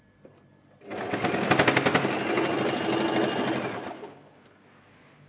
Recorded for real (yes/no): yes